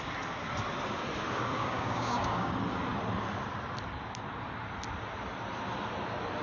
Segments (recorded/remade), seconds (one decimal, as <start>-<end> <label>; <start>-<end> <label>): 0.0-1.6 recorded; 1.6-2.5 remade; 2.5-6.4 recorded